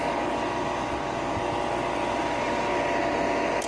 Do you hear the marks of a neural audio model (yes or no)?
no